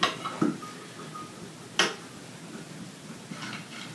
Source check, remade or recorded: recorded